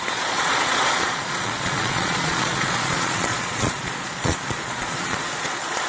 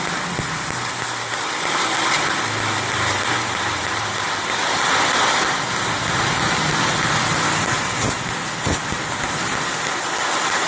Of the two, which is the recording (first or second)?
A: second